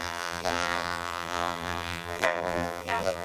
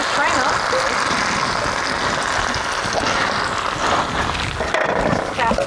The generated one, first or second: first